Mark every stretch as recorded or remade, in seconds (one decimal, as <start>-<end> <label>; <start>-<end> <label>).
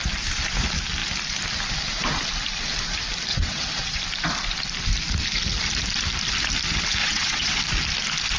0.0-3.3 recorded; 3.3-4.0 remade; 4.0-7.0 recorded; 7.0-7.6 remade; 7.6-8.4 recorded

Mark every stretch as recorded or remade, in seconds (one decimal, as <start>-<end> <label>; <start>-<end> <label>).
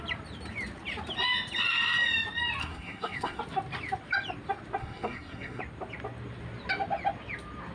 0.0-2.6 recorded; 2.6-3.4 remade; 3.4-4.8 recorded; 4.8-5.6 remade; 5.6-7.7 recorded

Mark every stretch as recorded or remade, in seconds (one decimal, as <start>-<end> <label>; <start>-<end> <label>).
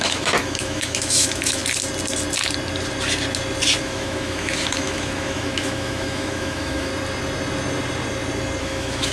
0.0-1.6 remade; 1.6-3.8 recorded; 3.8-6.9 remade; 6.9-8.6 recorded; 8.6-9.1 remade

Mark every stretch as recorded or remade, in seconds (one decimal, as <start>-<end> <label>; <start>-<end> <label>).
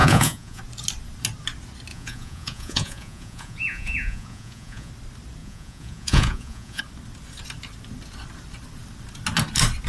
0.0-0.6 remade; 0.6-1.9 recorded; 1.9-4.9 remade; 4.9-5.4 recorded; 5.4-6.8 remade; 6.8-9.9 recorded